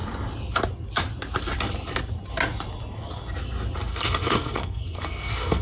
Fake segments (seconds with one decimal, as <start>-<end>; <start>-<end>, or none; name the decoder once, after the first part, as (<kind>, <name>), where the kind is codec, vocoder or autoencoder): 3.9-5.6 (codec, SNAC)